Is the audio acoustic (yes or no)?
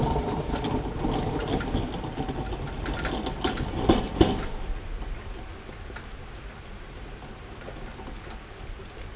yes